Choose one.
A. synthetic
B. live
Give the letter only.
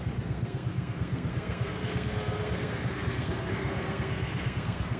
A